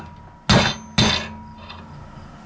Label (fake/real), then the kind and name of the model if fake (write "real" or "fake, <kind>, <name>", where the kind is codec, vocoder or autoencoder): real